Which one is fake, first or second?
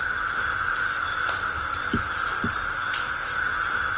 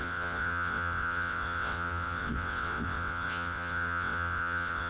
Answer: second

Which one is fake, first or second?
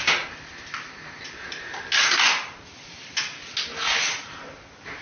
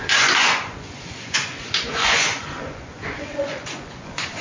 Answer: second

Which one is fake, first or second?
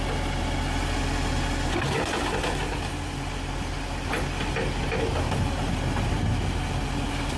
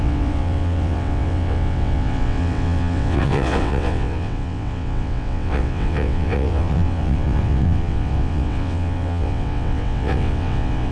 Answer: second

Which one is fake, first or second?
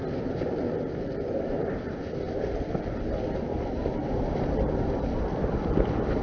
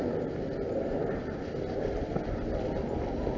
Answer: first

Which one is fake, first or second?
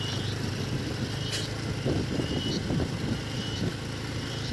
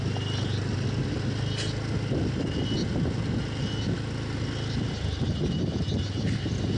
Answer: first